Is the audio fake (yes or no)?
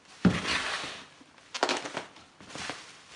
no